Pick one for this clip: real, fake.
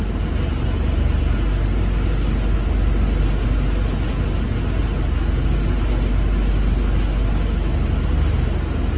real